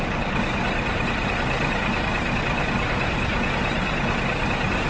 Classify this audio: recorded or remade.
recorded